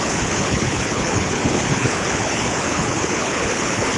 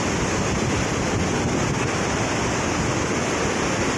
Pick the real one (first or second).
second